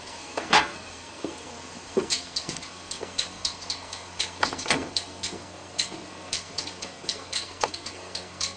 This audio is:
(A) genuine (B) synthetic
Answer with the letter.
B